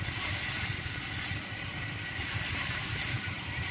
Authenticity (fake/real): fake